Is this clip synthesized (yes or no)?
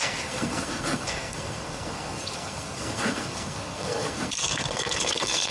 yes